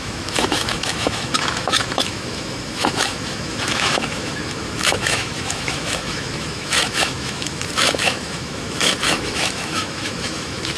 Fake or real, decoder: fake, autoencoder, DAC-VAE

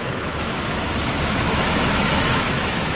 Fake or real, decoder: fake, autoencoder, DAC-VAE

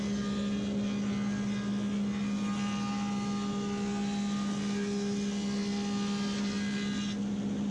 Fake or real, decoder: real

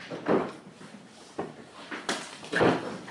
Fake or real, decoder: real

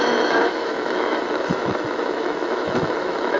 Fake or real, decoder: fake, autoencoder, DAC-VAE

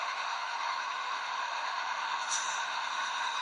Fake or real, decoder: fake, autoencoder, DAC-VAE